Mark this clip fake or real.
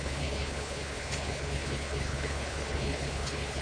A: fake